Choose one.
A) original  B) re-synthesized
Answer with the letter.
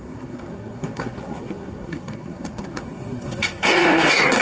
B